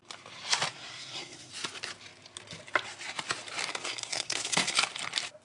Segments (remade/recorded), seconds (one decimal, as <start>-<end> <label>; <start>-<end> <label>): 0.0-0.7 recorded; 0.7-1.5 remade; 1.5-3.7 recorded; 3.7-4.8 remade; 4.8-5.4 recorded